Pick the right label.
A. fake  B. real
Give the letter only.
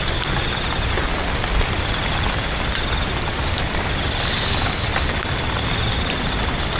B